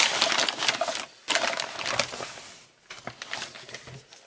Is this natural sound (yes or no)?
yes